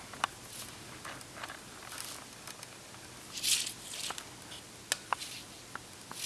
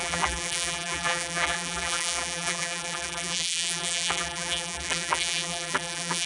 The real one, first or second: first